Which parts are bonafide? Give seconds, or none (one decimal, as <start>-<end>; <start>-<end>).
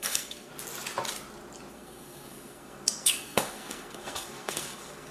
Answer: 0.5-1.7